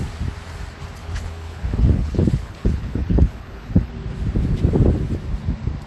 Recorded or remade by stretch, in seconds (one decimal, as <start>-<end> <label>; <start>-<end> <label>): 0.0-1.0 recorded; 1.0-3.9 remade; 3.9-5.9 recorded